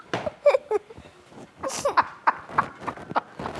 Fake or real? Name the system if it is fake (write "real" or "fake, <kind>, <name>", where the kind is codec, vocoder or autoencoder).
real